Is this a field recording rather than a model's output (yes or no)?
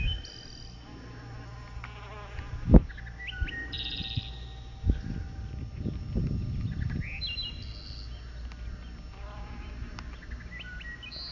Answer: yes